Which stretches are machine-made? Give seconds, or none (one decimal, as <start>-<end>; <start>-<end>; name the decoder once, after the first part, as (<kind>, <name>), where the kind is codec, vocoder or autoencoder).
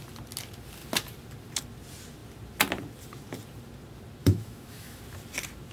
4.2-5.0 (autoencoder, DAC-VAE)